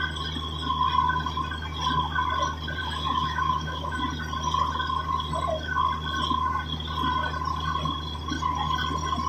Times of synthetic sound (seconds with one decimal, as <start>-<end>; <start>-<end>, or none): 2.8-4.0